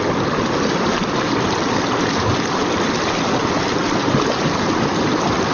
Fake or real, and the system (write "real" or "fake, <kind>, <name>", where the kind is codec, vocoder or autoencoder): real